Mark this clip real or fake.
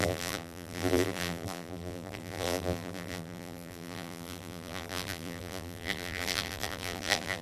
fake